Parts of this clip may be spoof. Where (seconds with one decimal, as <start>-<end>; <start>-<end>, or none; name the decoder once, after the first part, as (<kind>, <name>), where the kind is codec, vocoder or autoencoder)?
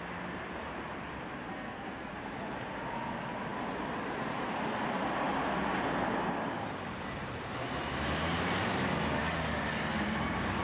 1.5-2.1 (codec, SNAC)